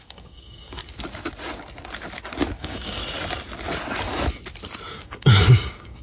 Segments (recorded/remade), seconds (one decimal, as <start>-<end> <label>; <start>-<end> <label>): 0.0-0.8 remade; 0.8-2.6 recorded; 2.6-3.0 remade; 3.0-4.9 recorded; 4.9-6.0 remade